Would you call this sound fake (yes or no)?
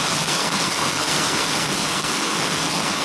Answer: yes